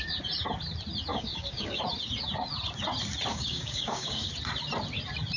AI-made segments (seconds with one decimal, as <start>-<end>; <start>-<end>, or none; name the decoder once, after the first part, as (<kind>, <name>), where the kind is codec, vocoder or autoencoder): 1.1-1.8 (codec, DAC); 3.3-4.3